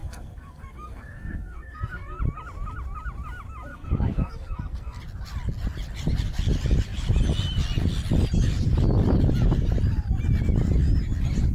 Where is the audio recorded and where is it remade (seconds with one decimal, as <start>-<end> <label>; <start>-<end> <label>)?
0.0-2.2 remade; 2.2-3.7 recorded; 3.7-5.0 remade; 5.0-11.5 recorded